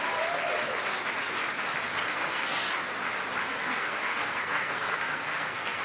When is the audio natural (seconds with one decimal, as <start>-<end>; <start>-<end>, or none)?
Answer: 0.0-2.1; 2.7-3.4